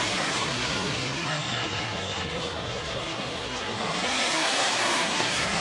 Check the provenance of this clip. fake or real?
fake